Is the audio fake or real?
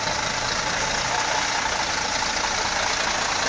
real